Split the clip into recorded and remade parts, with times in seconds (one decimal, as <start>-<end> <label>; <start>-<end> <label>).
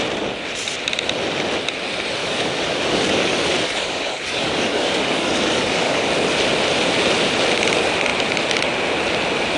0.0-2.2 recorded; 2.2-6.1 remade; 6.1-9.6 recorded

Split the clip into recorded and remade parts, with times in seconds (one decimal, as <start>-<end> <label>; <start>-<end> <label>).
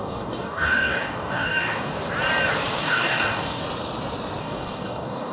0.0-1.9 remade; 1.9-2.8 recorded; 2.8-3.6 remade; 3.6-4.4 recorded; 4.4-5.3 remade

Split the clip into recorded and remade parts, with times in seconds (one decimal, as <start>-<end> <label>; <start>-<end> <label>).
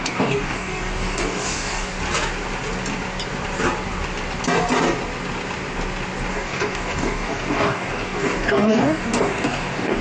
0.0-1.9 remade; 1.9-6.3 recorded; 6.3-10.0 remade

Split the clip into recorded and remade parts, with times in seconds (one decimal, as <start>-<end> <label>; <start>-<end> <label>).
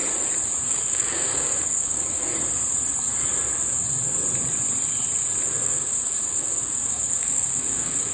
0.0-0.7 recorded; 0.7-2.3 remade; 2.3-5.5 recorded; 5.5-8.1 remade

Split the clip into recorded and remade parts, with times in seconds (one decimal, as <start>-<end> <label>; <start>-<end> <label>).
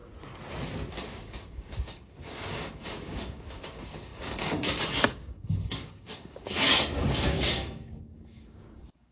0.0-0.9 recorded; 0.9-9.1 remade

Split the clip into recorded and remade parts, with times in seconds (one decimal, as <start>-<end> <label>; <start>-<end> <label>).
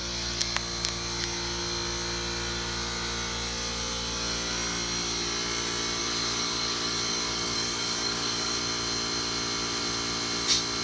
0.0-6.0 recorded; 6.0-8.6 remade; 8.6-10.8 recorded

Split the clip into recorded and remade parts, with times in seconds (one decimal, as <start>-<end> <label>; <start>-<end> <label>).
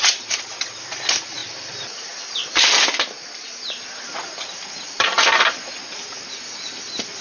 0.0-7.2 recorded